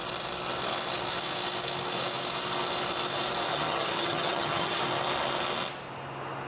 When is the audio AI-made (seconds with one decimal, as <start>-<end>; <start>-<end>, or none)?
3.5-4.8